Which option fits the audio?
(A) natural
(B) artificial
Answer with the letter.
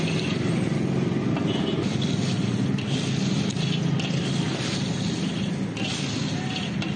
A